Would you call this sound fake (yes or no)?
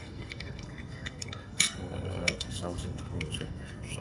yes